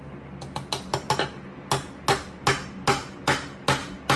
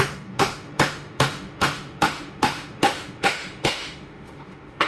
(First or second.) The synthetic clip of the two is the second